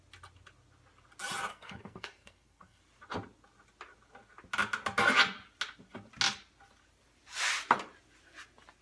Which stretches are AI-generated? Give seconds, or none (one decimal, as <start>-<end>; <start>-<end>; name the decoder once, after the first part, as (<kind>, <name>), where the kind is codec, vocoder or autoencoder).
1.5-2.8 (codec, SNAC)